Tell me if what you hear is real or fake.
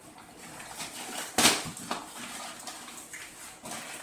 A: real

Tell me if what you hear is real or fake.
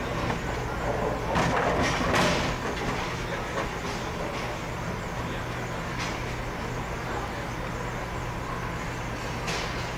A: real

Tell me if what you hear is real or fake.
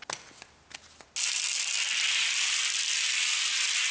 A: real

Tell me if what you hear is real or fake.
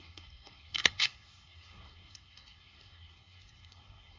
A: fake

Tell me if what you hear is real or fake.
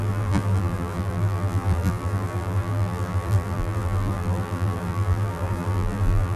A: fake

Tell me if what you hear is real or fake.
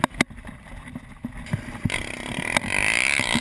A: real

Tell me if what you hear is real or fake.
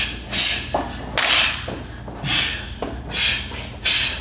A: real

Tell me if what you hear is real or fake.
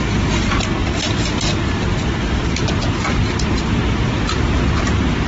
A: real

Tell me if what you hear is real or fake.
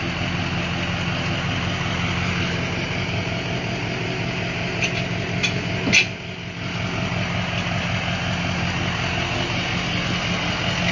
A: real